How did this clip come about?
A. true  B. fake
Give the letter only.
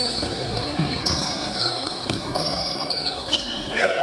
B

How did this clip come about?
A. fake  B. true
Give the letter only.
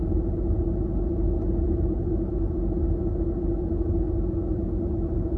B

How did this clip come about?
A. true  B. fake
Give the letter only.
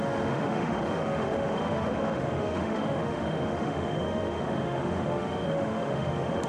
B